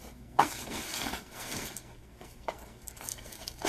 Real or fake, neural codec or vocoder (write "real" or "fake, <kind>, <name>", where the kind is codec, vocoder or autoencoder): fake, codec, SNAC